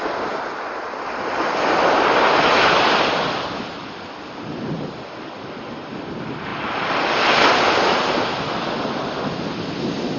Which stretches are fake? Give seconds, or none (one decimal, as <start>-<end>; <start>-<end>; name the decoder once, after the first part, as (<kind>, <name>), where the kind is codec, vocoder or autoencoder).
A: none